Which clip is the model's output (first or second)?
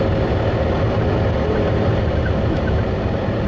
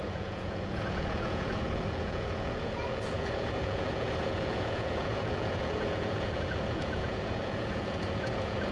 second